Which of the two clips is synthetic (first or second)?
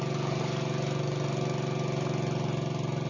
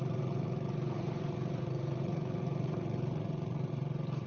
second